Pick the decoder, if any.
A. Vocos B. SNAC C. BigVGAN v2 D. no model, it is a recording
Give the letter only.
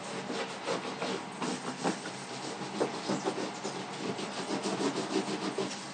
D